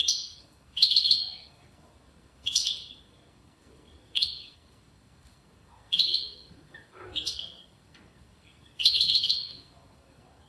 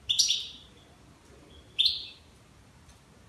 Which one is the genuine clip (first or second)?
second